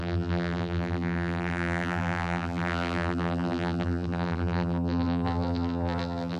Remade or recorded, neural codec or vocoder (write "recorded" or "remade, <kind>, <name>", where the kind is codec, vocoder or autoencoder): remade, vocoder, BigVGAN v2